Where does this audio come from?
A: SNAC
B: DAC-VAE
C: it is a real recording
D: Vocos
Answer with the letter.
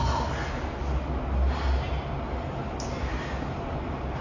C